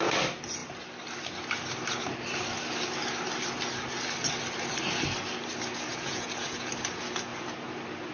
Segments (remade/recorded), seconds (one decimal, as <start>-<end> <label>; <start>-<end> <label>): 0.0-5.9 recorded; 5.9-6.7 remade; 6.7-8.1 recorded